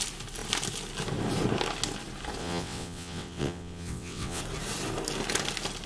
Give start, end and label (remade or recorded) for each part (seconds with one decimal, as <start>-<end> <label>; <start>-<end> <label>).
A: 0.0-2.4 recorded; 2.4-4.4 remade; 4.4-5.9 recorded